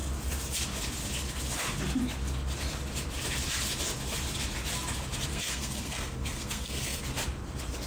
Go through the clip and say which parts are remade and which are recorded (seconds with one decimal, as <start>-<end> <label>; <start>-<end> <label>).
0.0-5.3 recorded; 5.3-7.0 remade; 7.0-7.9 recorded